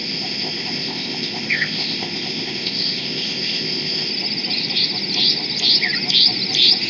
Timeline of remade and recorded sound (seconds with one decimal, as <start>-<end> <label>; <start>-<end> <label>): 0.0-4.1 remade; 4.1-6.9 recorded